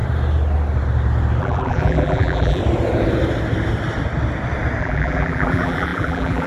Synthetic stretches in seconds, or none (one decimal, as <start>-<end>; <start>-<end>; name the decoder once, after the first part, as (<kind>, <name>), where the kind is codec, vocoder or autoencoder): 1.4-2.6 (vocoder, BigVGAN v2); 4.8-6.5